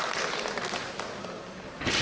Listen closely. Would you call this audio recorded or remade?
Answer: recorded